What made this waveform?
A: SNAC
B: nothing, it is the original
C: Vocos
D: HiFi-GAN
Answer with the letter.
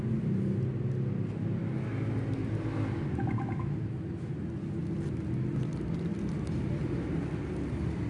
B